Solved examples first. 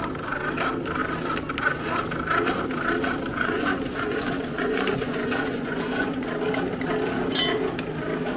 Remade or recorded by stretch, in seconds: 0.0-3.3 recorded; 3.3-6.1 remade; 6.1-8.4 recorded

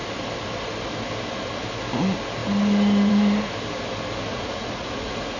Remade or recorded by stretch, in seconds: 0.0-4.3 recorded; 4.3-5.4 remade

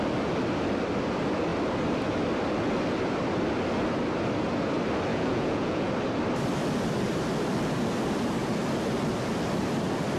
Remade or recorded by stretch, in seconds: 0.0-5.1 recorded; 5.1-5.9 remade; 5.9-10.2 recorded